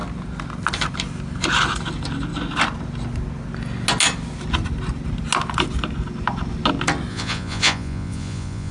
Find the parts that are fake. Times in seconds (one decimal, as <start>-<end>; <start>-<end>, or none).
7.1-8.7